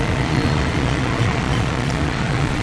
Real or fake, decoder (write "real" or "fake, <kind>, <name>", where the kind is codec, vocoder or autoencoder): fake, vocoder, Vocos